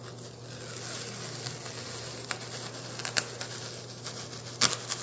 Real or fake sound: real